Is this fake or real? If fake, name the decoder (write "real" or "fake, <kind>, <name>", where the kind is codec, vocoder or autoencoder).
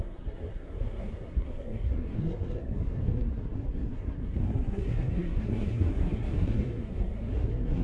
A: fake, codec, SNAC